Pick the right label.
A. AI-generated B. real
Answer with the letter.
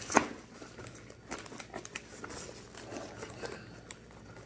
B